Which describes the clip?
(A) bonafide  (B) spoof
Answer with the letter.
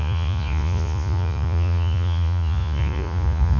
B